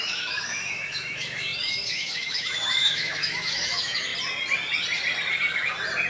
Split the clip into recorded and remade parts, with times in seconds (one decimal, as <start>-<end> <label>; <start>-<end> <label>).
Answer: 0.0-4.1 remade; 4.1-6.1 recorded